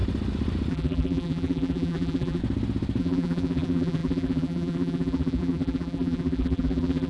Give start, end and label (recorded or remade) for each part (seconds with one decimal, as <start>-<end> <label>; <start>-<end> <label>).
0.0-0.7 recorded; 0.7-2.4 remade; 2.4-3.0 recorded; 3.0-7.1 remade